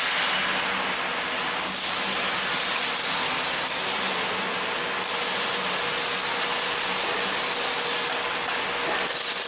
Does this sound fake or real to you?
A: real